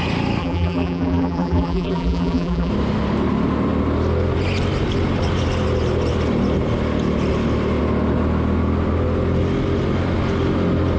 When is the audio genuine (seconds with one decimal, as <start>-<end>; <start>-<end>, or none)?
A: 0.0-0.4; 2.7-11.0